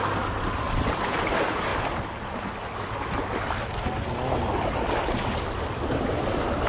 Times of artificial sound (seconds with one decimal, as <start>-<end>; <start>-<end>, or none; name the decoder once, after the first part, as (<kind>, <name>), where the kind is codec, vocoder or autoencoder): none